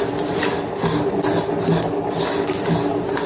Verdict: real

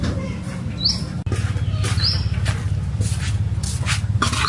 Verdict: real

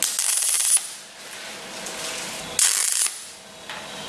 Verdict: real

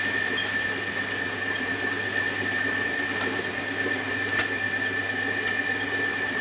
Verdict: real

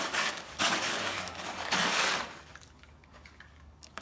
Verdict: fake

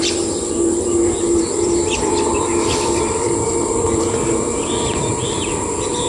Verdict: fake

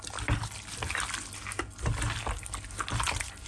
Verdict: real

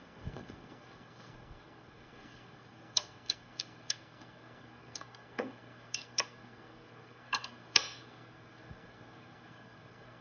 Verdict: fake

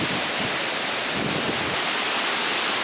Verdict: real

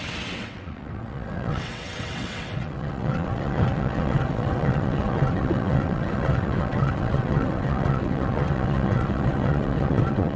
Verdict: fake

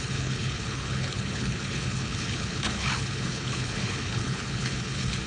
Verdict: fake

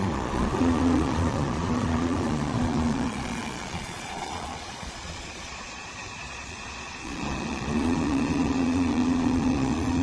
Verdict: fake